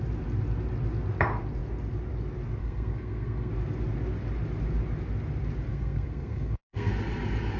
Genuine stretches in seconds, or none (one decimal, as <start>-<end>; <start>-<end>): 0.0-2.6; 3.5-5.7; 6.9-7.6